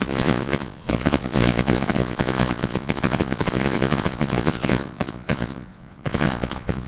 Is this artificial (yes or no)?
yes